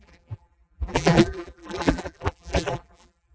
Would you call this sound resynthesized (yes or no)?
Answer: yes